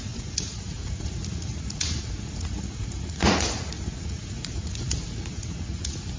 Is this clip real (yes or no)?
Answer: no